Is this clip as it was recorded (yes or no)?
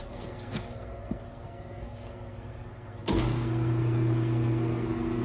no